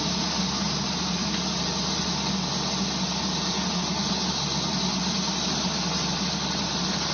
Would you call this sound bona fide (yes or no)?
yes